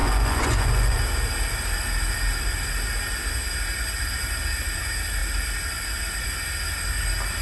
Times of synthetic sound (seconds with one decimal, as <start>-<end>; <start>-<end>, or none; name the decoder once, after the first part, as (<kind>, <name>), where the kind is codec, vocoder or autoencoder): 0.0-1.0 (vocoder, Vocos)